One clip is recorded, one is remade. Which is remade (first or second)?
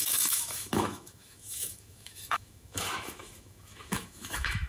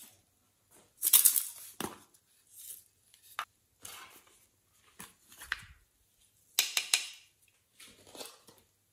first